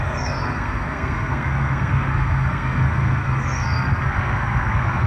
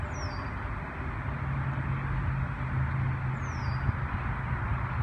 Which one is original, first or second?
second